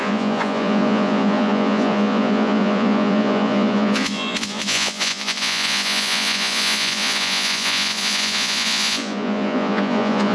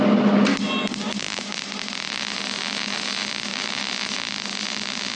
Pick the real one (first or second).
second